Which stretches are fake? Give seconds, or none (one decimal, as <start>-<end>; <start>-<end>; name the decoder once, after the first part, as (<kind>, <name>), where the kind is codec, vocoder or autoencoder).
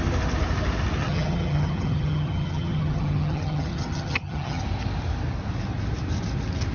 1.0-4.6 (vocoder, HiFi-GAN)